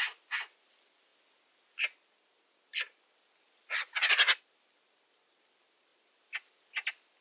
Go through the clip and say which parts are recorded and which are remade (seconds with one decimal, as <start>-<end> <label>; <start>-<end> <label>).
0.0-7.2 recorded